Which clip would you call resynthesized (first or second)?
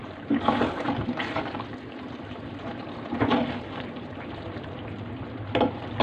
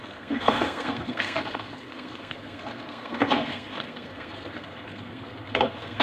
second